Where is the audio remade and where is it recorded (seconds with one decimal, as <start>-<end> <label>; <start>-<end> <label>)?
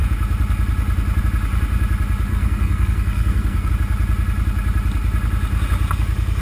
0.0-2.3 recorded; 2.3-3.7 remade; 3.7-6.4 recorded